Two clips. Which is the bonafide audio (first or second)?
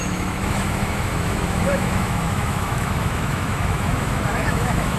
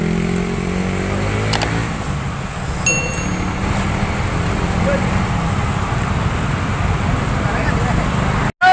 second